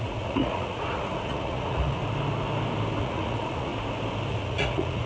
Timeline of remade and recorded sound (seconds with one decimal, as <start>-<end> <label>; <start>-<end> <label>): 0.0-2.0 remade; 2.0-3.0 recorded; 3.0-3.7 remade; 3.7-4.3 recorded; 4.3-5.1 remade